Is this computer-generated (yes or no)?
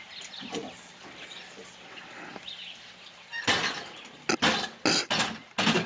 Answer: no